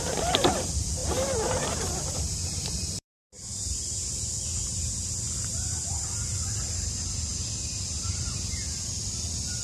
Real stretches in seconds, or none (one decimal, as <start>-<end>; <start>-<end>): 3.5-5.8